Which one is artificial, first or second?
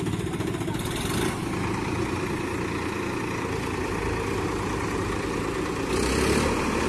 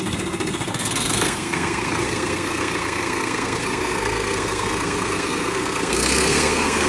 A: second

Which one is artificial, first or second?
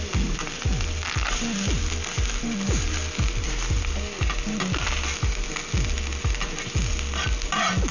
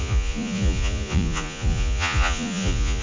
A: second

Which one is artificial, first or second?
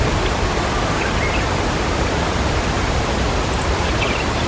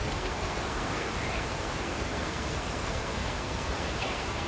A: second